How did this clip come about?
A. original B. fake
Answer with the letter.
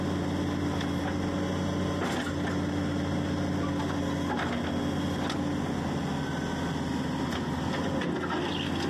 A